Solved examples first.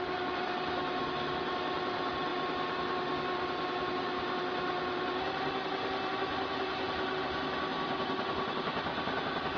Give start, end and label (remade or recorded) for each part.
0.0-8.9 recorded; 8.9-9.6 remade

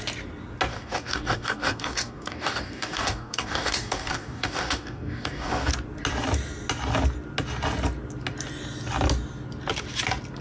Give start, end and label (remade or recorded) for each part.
0.0-0.7 recorded; 0.7-5.7 remade; 5.7-10.4 recorded

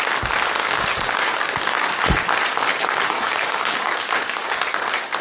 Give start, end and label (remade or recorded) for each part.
0.0-0.6 recorded; 0.6-2.0 remade; 2.0-2.7 recorded; 2.7-4.5 remade; 4.5-5.2 recorded

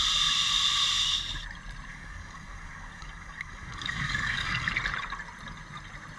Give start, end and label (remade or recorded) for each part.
0.0-1.9 recorded; 1.9-4.7 remade; 4.7-6.2 recorded

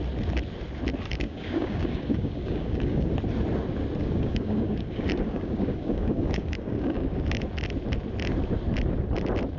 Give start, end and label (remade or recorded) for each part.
0.0-1.1 recorded; 1.1-3.1 remade; 3.1-4.0 recorded; 4.0-7.4 remade; 7.4-9.6 recorded

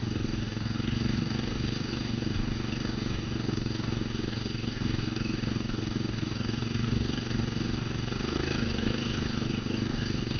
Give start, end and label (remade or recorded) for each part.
0.0-10.4 remade